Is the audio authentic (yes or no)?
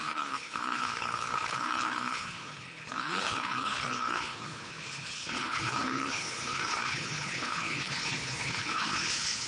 no